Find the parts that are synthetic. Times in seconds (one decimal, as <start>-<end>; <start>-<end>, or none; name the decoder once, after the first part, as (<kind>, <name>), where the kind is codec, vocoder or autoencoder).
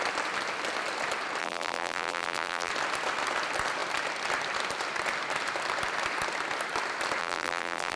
1.4-2.7 (vocoder, BigVGAN v2); 7.2-8.0